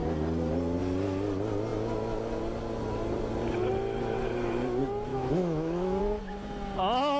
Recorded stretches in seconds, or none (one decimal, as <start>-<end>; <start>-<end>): 0.0-5.1; 6.0-7.2